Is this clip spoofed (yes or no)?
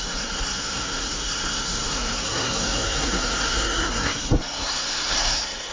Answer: yes